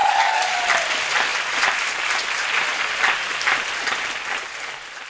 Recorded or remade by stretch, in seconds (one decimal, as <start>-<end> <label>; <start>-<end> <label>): 0.0-0.6 remade; 0.6-5.1 recorded